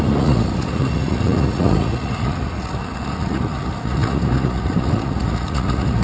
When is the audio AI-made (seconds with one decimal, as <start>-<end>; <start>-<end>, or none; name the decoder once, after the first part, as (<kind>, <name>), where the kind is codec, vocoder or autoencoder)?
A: 0.0-6.0 (vocoder, Vocos)